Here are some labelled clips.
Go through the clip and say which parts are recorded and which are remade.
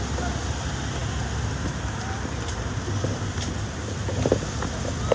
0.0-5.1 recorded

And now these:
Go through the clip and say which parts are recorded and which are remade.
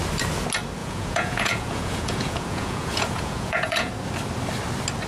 0.0-0.8 recorded; 0.8-3.9 remade; 3.9-5.1 recorded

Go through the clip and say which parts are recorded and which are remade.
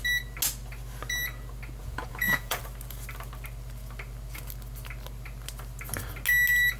0.0-1.8 recorded; 1.8-2.6 remade; 2.6-6.8 recorded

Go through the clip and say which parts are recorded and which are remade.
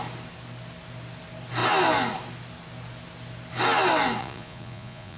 0.0-4.2 recorded; 4.2-5.2 remade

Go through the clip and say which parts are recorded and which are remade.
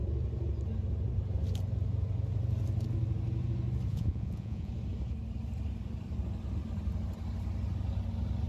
0.0-3.9 recorded; 3.9-4.7 remade; 4.7-8.5 recorded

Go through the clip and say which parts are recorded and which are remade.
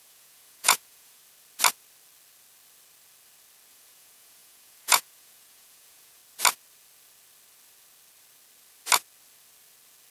0.0-1.2 remade; 1.2-3.7 recorded; 3.7-6.2 remade; 6.2-10.1 recorded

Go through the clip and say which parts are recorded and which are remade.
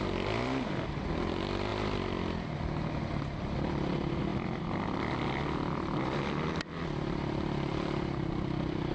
0.0-8.9 recorded